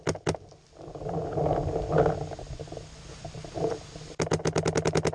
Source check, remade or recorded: recorded